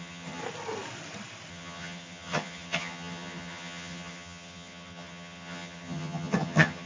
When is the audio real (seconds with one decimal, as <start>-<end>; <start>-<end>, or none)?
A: 0.4-1.5